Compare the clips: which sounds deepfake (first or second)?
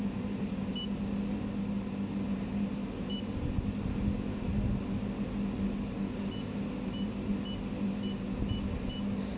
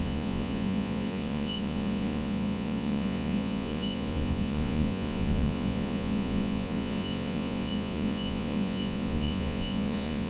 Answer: second